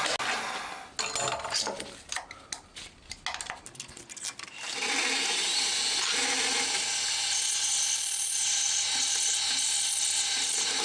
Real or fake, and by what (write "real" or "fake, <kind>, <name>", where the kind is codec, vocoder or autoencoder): real